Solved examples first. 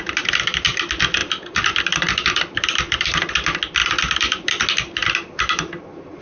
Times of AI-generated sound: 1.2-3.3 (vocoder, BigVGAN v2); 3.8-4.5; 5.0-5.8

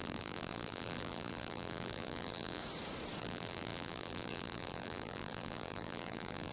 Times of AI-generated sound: 0.0-2.6 (vocoder, BigVGAN v2); 3.2-6.5

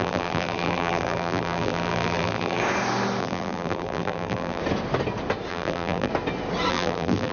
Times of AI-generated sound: 0.0-2.6 (vocoder, BigVGAN v2); 3.2-4.6; 5.5-6.1; 6.7-7.3

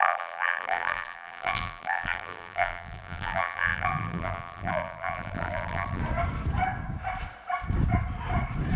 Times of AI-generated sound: 0.0-6.0 (vocoder, BigVGAN v2)

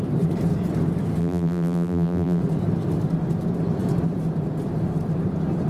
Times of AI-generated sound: 1.2-2.4 (vocoder, BigVGAN v2)

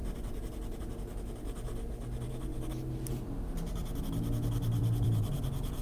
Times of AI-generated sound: 0.0-1.9 (vocoder, BigVGAN v2); 4.8-5.8